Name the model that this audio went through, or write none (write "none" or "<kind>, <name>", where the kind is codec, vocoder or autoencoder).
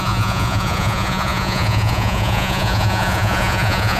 vocoder, Vocos